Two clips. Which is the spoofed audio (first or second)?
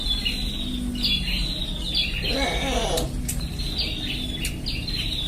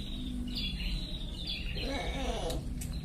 second